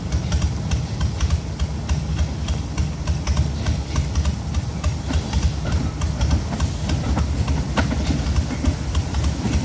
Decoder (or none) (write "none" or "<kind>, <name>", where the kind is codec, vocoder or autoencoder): none